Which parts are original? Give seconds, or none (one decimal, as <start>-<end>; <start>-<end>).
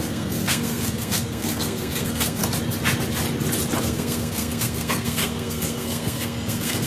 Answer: 2.4-3.8